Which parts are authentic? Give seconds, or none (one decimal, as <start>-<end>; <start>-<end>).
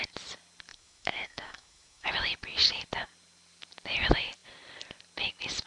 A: 0.0-0.7; 2.1-5.7